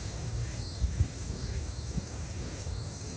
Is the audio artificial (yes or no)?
yes